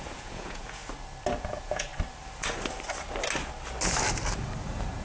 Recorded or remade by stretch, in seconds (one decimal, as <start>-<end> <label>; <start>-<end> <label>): 0.0-0.8 remade; 0.8-1.4 recorded; 1.4-1.9 remade; 1.9-5.0 recorded